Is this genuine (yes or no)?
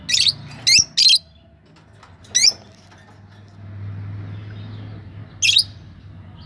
yes